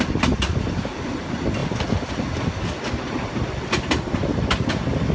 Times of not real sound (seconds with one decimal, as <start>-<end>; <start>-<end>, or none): none